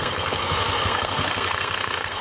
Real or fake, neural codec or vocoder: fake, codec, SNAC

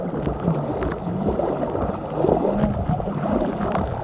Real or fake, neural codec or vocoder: real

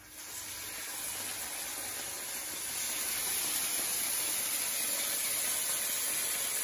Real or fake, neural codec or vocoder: real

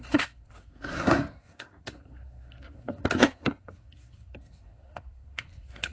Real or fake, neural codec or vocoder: fake, codec, SNAC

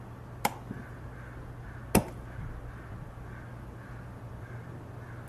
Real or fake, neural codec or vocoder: real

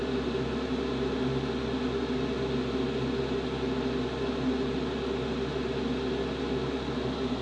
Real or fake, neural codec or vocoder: real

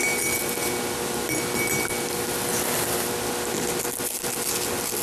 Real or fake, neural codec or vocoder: real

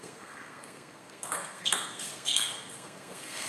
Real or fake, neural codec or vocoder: fake, codec, SNAC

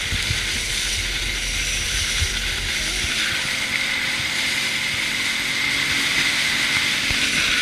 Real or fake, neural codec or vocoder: real